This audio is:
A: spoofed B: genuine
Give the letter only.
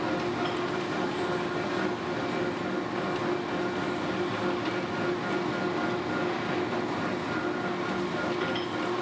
B